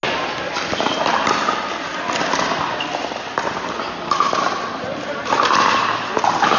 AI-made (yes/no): no